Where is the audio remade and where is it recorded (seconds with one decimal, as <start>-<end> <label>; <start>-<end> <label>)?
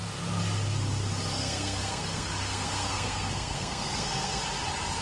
0.0-1.4 recorded; 1.4-4.4 remade; 4.4-5.0 recorded